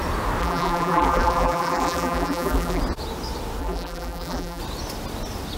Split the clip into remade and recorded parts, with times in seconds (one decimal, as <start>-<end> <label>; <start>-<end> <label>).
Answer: 0.0-0.4 recorded; 0.4-2.8 remade; 2.8-3.6 recorded; 3.6-4.6 remade; 4.6-5.6 recorded